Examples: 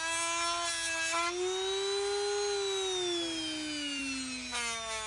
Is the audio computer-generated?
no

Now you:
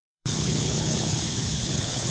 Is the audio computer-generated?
yes